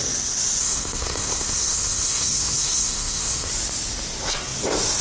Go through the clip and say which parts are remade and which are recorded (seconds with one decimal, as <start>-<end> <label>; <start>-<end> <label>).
0.0-0.6 recorded; 0.6-3.5 remade; 3.5-5.0 recorded